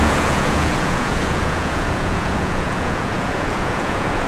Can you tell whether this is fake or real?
fake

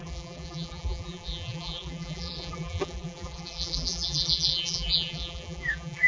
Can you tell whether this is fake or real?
fake